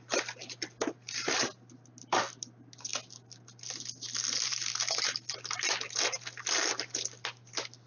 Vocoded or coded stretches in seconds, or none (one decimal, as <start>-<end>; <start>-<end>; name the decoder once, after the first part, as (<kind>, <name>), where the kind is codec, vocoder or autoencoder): none